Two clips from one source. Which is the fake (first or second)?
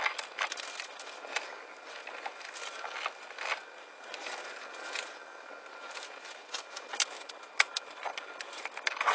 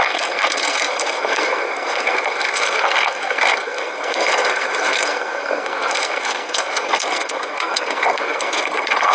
second